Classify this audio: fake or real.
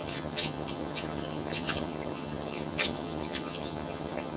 fake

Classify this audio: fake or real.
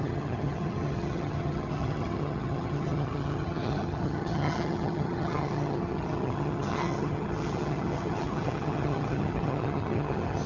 fake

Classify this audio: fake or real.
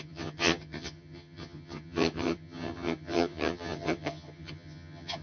fake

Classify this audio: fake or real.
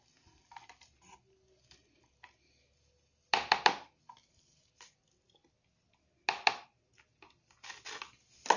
real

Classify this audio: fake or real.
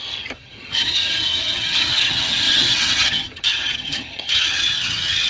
fake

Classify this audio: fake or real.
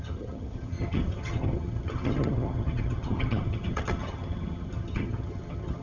fake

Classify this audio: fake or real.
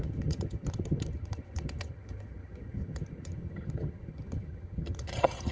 fake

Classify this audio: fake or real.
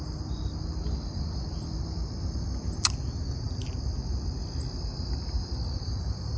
real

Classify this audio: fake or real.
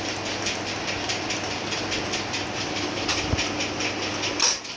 real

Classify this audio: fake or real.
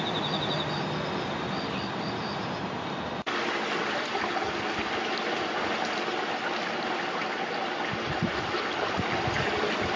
real